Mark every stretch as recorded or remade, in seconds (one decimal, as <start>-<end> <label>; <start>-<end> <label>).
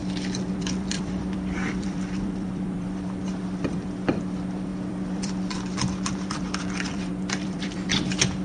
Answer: 0.0-0.5 recorded; 0.5-8.4 remade